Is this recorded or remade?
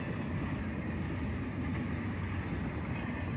recorded